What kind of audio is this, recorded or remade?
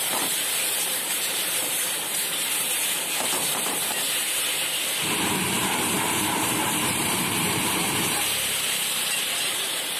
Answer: remade